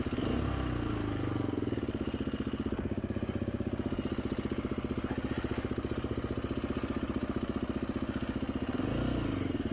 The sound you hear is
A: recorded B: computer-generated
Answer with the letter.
A